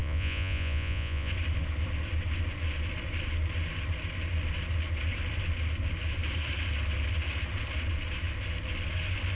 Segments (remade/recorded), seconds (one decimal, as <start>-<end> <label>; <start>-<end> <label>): 0.0-1.3 remade; 1.3-9.4 recorded